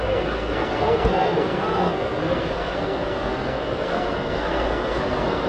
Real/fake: fake